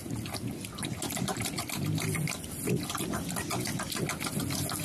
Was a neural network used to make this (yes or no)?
no